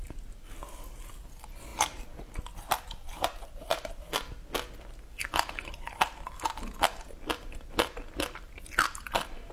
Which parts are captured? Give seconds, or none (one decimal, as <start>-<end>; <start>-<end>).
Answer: 0.0-9.5